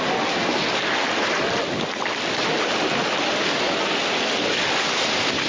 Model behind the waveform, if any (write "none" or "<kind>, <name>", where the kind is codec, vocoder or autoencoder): none